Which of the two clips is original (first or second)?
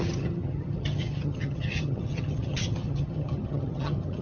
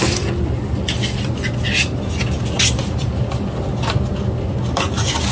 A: second